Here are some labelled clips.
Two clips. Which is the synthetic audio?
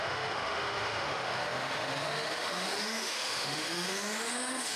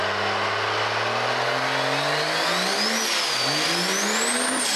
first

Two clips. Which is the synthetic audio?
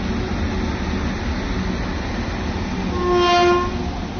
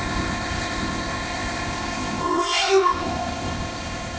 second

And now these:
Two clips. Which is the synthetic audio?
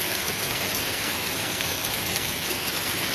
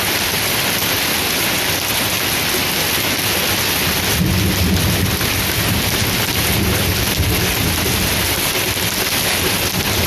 first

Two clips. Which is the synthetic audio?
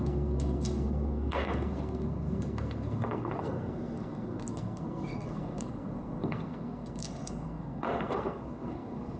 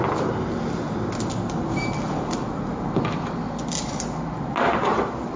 first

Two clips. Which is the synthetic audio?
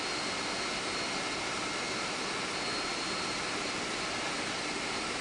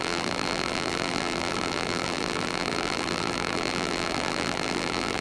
second